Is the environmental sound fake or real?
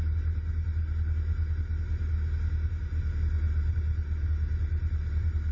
real